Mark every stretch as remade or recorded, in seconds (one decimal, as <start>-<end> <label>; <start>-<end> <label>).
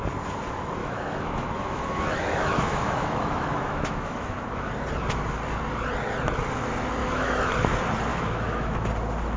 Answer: 0.0-0.8 recorded; 0.8-4.7 remade; 4.7-7.0 recorded; 7.0-7.5 remade; 7.5-8.1 recorded; 8.1-8.9 remade; 8.9-9.4 recorded